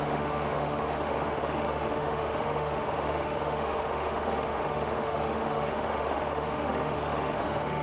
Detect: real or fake fake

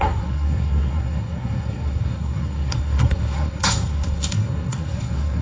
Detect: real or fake fake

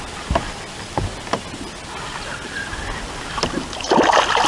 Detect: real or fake real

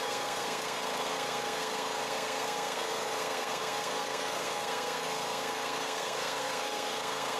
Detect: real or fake fake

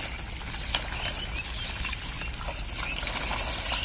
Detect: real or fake real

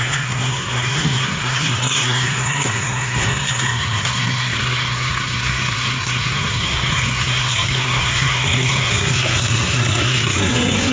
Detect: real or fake fake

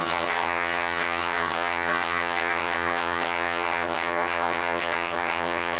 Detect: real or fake fake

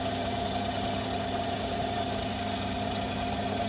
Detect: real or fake real